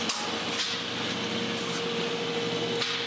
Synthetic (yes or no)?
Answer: no